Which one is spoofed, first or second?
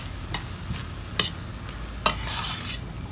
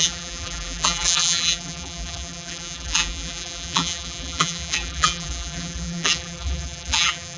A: second